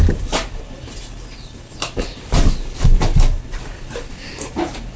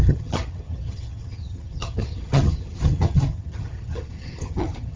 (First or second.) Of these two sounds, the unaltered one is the first